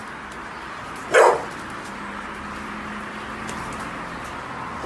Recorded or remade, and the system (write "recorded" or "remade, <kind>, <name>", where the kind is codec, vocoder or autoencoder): recorded